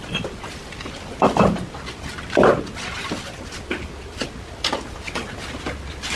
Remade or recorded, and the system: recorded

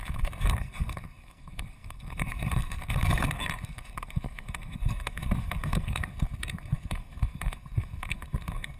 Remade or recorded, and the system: remade, codec, SNAC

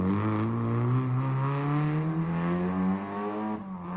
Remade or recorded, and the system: recorded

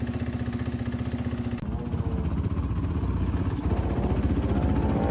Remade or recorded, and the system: recorded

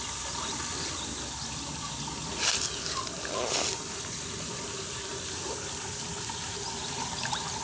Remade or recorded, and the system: recorded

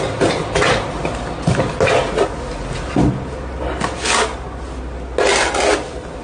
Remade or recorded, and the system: recorded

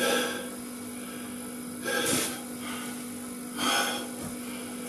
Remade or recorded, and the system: recorded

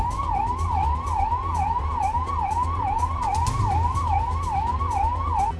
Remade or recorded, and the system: recorded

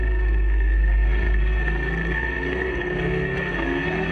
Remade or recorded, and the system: remade, codec, SNAC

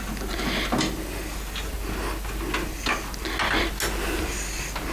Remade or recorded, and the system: recorded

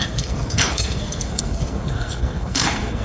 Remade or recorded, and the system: remade, codec, SNAC